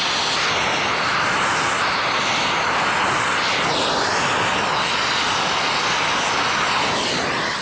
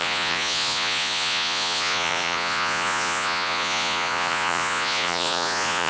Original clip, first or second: first